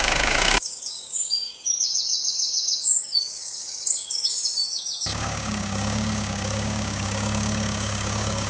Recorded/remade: remade